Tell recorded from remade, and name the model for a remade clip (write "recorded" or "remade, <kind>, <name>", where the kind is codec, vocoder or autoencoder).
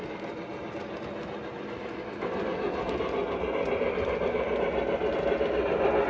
recorded